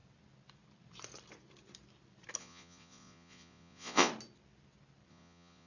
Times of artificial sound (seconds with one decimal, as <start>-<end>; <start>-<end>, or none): 2.4-4.1; 5.1-5.7